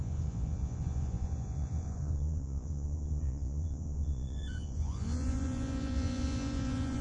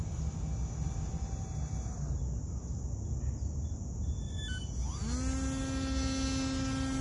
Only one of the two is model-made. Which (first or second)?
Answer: first